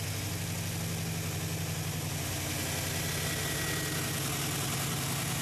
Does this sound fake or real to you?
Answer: real